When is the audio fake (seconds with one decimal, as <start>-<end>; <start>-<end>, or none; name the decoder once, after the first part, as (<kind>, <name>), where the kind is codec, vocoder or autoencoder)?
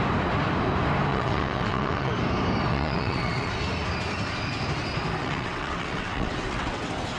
1.1-2.1 (vocoder, WaveNeXt); 2.7-3.5; 5.2-6.8